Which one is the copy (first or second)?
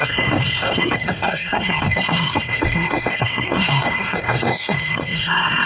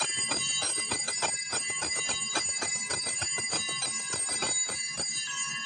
first